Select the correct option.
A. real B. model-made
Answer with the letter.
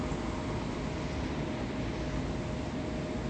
A